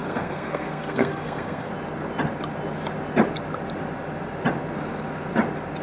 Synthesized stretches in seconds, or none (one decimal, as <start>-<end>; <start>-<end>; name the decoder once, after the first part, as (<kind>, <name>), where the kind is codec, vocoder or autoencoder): 0.0-1.7 (codec, SNAC)

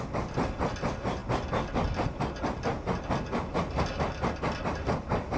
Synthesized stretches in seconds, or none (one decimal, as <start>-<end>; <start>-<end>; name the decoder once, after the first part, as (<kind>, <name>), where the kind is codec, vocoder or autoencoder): none

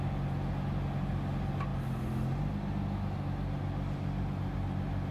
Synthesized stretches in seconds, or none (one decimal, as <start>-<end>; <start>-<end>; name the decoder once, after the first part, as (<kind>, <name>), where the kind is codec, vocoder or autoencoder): none